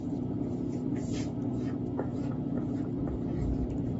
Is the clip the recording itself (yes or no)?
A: no